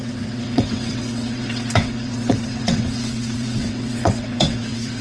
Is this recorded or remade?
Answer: remade